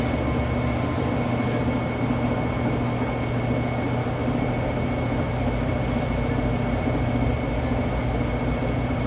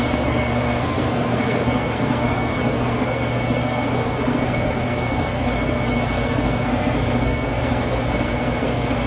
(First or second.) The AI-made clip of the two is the second